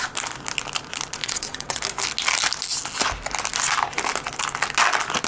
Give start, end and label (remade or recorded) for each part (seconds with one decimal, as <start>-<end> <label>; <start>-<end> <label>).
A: 0.0-1.2 recorded; 1.2-1.8 remade; 1.8-5.3 recorded